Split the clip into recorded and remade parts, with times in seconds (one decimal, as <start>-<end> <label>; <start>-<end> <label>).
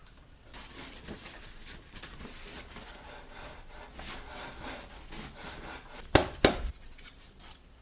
0.0-3.6 remade; 3.6-7.8 recorded